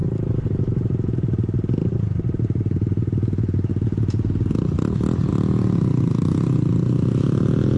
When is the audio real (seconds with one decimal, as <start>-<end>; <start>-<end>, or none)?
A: 0.0-7.8